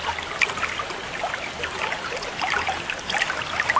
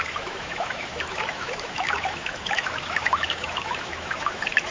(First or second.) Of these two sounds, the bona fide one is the first